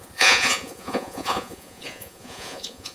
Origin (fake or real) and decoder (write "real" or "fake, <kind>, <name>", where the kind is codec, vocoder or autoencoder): fake, vocoder, Vocos